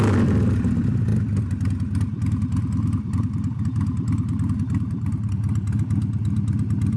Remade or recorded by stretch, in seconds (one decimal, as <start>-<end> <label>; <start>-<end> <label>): 0.0-7.0 recorded